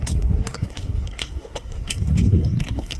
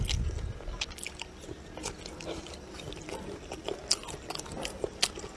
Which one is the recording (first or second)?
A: second